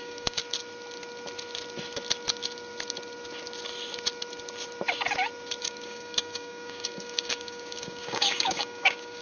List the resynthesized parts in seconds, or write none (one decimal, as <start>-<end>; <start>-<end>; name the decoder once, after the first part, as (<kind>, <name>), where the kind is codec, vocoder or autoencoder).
0.0-0.4 (codec, DAC); 5.6-9.2